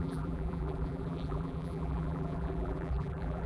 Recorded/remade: remade